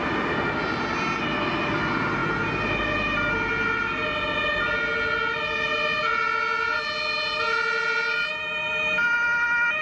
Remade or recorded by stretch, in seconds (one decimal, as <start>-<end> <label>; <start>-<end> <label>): 0.0-9.8 recorded